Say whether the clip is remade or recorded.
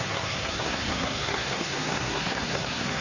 remade